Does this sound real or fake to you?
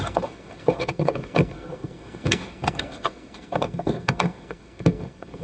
fake